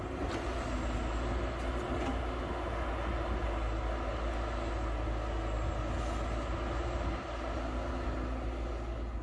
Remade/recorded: recorded